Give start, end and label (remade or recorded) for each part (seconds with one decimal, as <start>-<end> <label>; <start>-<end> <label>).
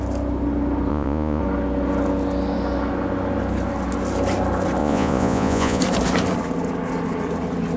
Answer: 0.0-0.9 recorded; 0.9-1.4 remade; 1.4-4.8 recorded; 4.8-5.8 remade; 5.8-7.8 recorded